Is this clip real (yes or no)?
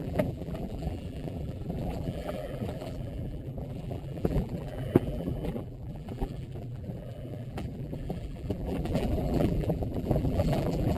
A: no